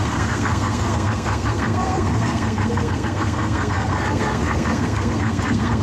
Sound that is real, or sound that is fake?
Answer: fake